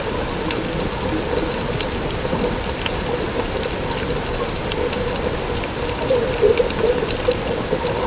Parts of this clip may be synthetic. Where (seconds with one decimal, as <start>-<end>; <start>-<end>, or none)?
none